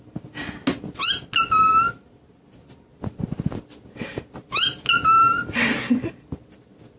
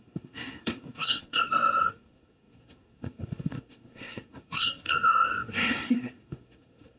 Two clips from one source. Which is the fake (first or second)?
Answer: second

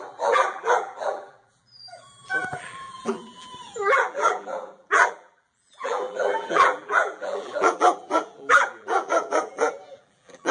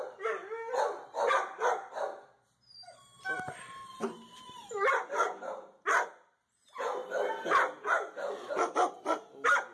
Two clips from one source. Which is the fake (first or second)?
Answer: first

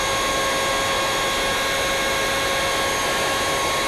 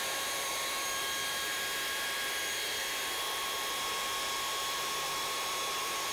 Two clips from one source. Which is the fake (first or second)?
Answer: second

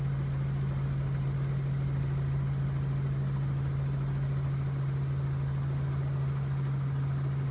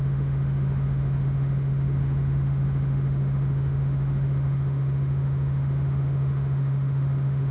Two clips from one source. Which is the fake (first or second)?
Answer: second